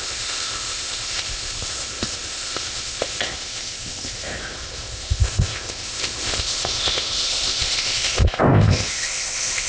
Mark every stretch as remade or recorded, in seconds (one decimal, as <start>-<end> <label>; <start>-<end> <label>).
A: 0.0-9.7 remade